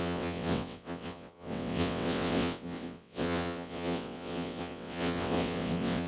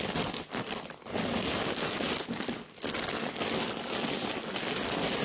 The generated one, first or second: first